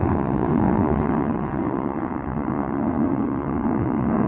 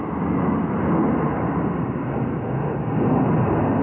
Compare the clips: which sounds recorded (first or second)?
second